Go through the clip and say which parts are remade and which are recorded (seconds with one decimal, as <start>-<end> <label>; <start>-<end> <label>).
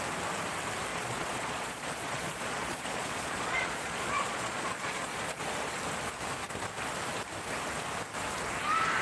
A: 0.0-0.9 recorded; 0.9-5.4 remade; 5.4-9.0 recorded